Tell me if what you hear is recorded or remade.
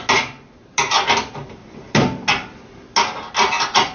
recorded